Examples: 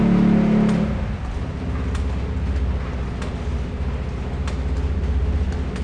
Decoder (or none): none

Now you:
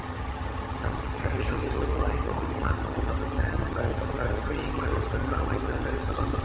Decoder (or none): vocoder, HiFi-GAN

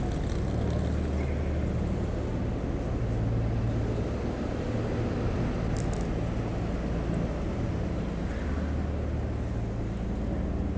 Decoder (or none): none